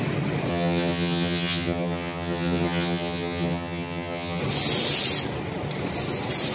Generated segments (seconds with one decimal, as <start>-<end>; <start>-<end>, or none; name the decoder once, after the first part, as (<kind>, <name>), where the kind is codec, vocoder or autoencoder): 0.5-4.4 (vocoder, HiFi-GAN)